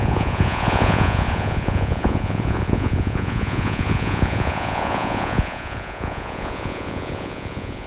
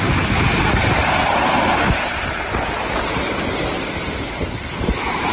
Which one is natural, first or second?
second